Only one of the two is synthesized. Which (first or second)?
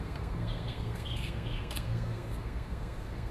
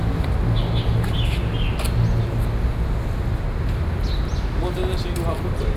first